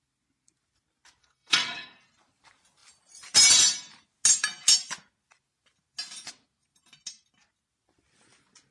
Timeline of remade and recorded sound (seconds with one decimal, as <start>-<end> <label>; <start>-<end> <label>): 0.0-1.2 recorded; 1.2-2.0 remade; 2.0-8.7 recorded